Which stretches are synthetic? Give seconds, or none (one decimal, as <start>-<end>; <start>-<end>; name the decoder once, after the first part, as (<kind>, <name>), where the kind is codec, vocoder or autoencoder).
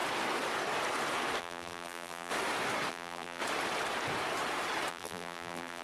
1.4-2.3 (vocoder, BigVGAN v2); 2.9-3.4; 4.9-5.8